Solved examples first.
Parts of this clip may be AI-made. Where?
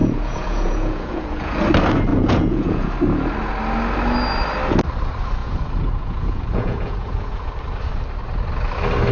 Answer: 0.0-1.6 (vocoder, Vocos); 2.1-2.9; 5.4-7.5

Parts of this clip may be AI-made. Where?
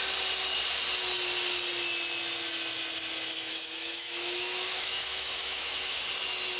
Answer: 3.5-6.0 (autoencoder, DAC-VAE)